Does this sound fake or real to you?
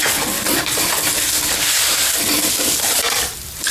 real